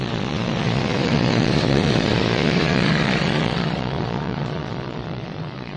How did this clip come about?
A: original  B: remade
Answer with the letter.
B